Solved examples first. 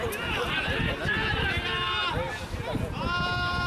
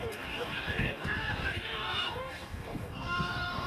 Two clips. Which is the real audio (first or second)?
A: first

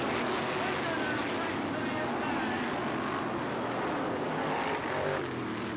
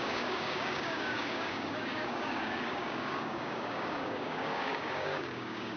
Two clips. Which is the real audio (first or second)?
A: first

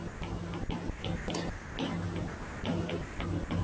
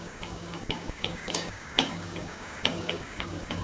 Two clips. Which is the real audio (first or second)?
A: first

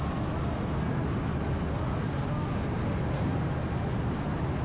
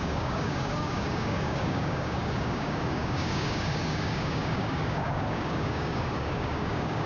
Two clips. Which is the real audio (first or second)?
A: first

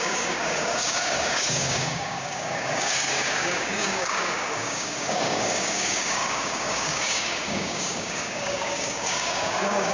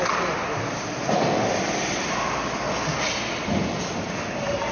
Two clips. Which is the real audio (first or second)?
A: second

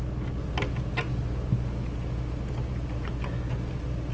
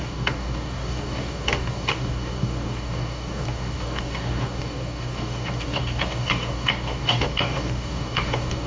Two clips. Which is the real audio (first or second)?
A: first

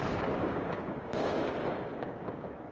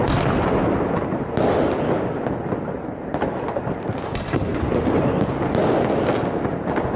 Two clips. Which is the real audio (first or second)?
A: second